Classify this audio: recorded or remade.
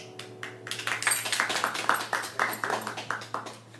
recorded